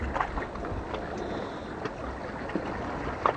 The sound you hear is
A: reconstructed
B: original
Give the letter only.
B